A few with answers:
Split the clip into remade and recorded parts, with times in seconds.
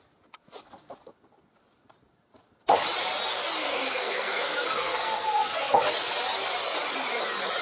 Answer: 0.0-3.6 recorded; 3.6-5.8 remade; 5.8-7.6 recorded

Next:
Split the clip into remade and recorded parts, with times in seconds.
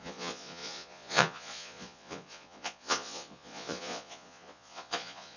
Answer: 0.0-5.4 remade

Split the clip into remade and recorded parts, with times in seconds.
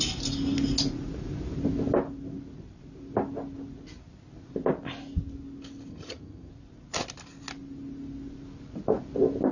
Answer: 0.0-5.9 recorded; 5.9-6.5 remade; 6.5-9.5 recorded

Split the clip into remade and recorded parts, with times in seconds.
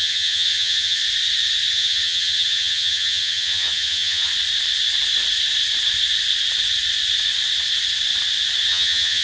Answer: 0.0-1.0 remade; 1.0-1.7 recorded; 1.7-4.3 remade; 4.3-8.7 recorded; 8.7-9.2 remade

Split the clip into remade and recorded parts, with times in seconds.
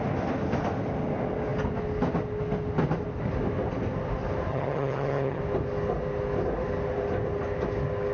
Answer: 0.0-4.5 recorded; 4.5-5.4 remade; 5.4-8.1 recorded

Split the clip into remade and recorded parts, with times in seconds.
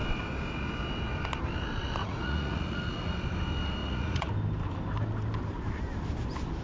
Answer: 0.0-2.0 recorded; 2.0-3.1 remade; 3.1-3.8 recorded; 3.8-4.3 remade; 4.3-6.6 recorded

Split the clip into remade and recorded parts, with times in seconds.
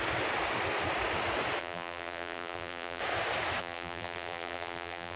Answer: 0.0-1.6 recorded; 1.6-3.0 remade; 3.0-3.6 recorded; 3.6-5.2 remade